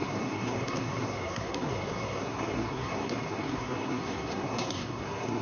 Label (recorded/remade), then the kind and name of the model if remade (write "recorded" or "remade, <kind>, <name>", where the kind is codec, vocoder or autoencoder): remade, codec, SNAC